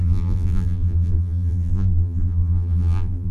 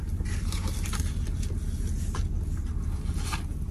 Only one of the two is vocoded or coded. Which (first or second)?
first